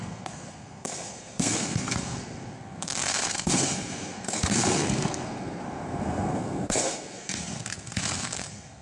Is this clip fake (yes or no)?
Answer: yes